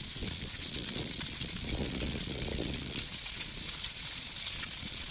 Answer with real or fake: fake